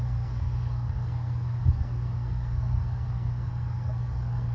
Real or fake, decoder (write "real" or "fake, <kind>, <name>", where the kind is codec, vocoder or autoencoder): fake, codec, SNAC